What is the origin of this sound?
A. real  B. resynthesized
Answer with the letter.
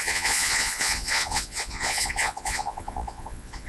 B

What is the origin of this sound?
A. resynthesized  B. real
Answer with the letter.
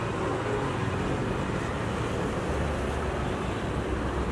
B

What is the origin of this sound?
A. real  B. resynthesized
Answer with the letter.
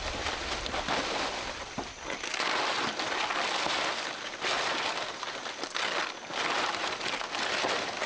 A